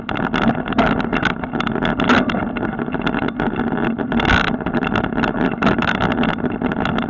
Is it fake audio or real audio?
real